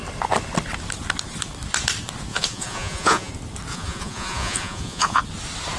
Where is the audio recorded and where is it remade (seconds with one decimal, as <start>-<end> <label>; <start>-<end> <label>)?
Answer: 0.0-2.3 recorded; 2.3-3.3 remade; 3.3-3.7 recorded; 3.7-5.2 remade; 5.2-5.8 recorded